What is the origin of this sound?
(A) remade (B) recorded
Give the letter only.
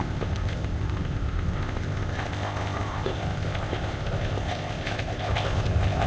A